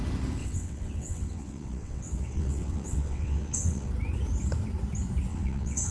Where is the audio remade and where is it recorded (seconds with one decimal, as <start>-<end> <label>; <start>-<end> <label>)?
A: 0.0-0.4 recorded; 0.4-3.9 remade; 3.9-5.3 recorded; 5.3-5.9 remade